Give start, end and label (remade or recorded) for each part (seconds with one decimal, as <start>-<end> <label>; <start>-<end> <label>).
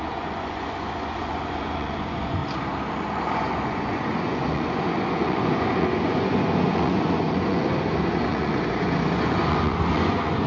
0.0-2.4 remade; 2.4-2.9 recorded; 2.9-10.5 remade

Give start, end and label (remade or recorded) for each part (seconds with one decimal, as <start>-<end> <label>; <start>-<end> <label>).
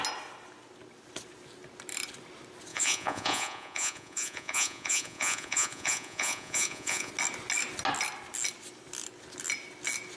0.0-2.7 recorded; 2.7-7.1 remade; 7.1-10.2 recorded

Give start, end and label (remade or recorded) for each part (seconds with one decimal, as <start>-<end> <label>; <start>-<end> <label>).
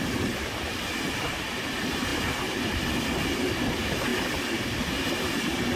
0.0-5.8 recorded